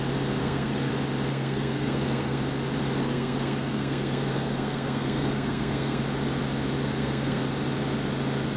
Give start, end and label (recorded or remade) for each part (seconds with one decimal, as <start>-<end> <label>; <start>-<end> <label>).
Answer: 0.0-0.4 recorded; 0.4-0.9 remade; 0.9-1.3 recorded; 1.3-2.4 remade; 2.4-3.0 recorded; 3.0-6.0 remade; 6.0-6.8 recorded; 6.8-7.4 remade; 7.4-8.6 recorded